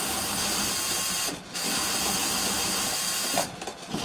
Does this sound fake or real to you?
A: real